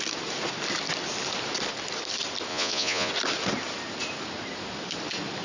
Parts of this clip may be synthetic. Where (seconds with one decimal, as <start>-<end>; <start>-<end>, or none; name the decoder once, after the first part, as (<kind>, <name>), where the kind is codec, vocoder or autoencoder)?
2.5-3.1 (vocoder, Vocos)